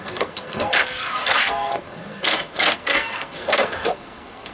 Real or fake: fake